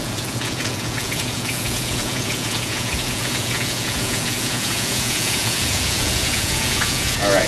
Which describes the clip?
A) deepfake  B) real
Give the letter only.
A